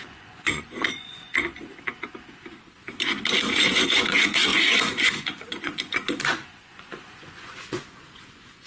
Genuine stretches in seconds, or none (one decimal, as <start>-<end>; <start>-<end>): 1.6-3.6

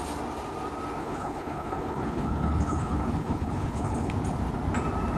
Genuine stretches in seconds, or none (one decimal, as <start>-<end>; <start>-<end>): 0.0-1.0; 4.1-5.2

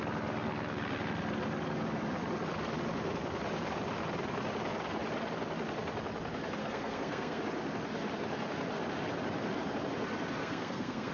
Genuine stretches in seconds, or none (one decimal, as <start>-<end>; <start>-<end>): 0.0-6.6; 7.4-10.4

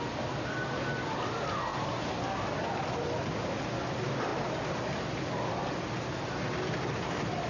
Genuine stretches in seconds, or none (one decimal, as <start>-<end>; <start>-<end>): 0.0-7.5